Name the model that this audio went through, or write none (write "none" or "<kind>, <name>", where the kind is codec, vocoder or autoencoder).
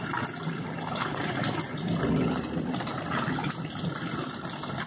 none